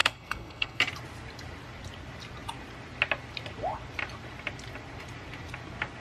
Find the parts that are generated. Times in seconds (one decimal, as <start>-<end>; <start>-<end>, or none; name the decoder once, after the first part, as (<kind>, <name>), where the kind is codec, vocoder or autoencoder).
0.0-0.8 (codec, SNAC)